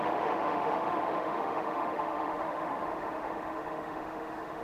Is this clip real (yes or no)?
no